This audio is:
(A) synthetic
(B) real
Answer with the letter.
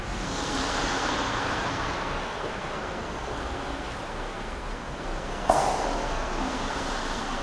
A